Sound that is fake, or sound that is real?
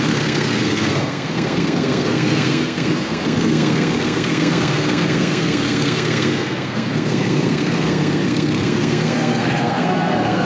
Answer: fake